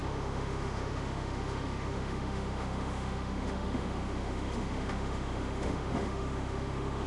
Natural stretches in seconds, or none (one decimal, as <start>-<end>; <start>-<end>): none